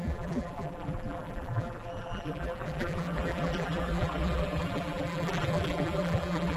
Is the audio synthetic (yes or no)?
yes